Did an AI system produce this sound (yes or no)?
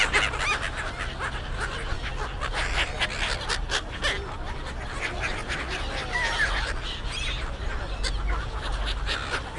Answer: no